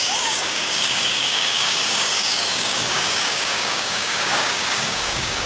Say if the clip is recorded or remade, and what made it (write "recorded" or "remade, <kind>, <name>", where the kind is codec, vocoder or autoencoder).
remade, codec, DAC